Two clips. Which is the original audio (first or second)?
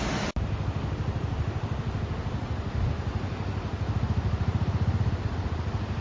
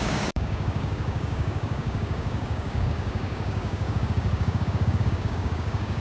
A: first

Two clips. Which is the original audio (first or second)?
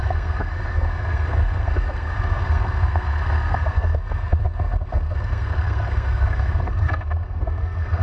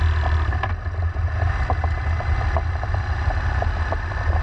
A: second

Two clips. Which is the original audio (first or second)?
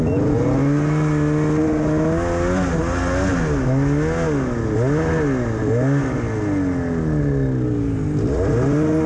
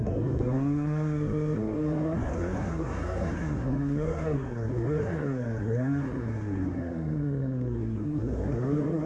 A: first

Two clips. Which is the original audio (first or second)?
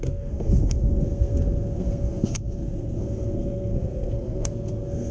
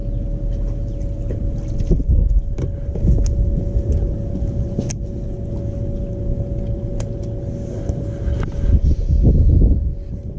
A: second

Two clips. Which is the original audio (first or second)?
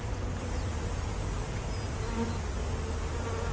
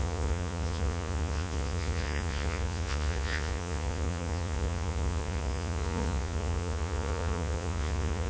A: first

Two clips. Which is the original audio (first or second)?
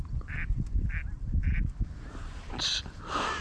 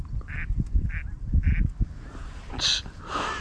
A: second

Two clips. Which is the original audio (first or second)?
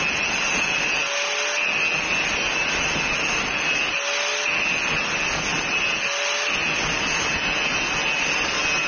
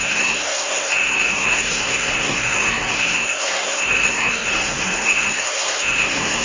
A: first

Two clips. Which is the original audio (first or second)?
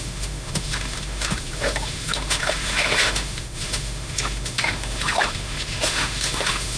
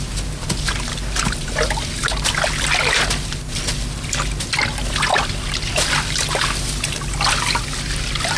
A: second